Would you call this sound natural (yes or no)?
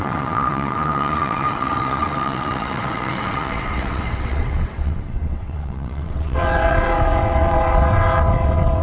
no